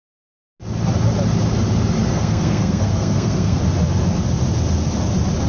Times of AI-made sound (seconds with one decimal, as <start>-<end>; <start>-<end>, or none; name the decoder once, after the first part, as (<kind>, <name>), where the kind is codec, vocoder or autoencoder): 2.1-3.6 (codec, SNAC)